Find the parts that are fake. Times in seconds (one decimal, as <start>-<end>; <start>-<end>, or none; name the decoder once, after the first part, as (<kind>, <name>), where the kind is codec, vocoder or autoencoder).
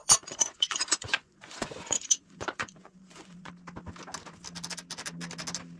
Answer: 0.0-3.5 (vocoder, Vocos)